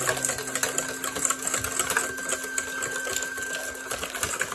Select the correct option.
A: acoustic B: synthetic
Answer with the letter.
A